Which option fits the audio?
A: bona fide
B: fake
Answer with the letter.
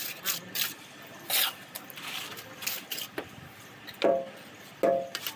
A